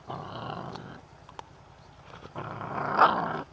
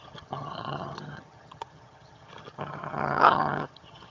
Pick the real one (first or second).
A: first